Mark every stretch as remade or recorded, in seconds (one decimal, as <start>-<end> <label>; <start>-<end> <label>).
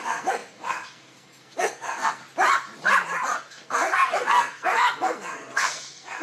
0.0-2.2 remade; 2.2-3.5 recorded; 3.5-6.2 remade